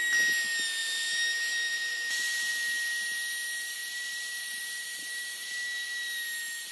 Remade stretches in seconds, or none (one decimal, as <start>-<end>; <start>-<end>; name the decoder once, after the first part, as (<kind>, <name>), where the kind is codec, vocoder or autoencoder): 0.8-2.5 (vocoder, BigVGAN v2); 3.8-5.5